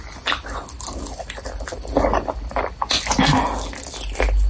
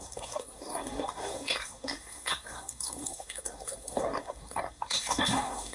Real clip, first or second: first